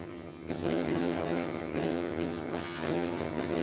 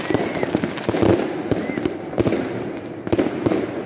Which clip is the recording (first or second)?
second